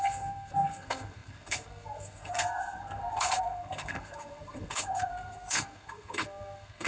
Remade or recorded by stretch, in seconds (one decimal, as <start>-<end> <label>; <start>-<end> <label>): 0.0-6.9 remade